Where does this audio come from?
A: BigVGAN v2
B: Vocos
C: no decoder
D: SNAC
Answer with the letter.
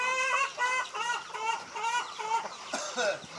C